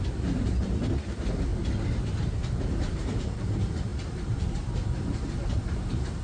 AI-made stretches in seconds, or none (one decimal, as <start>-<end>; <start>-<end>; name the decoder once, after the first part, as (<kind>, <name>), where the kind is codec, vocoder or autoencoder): 0.0-1.5 (vocoder, BigVGAN v2); 2.6-6.2